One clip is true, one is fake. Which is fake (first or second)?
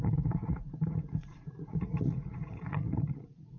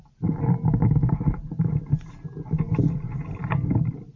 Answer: first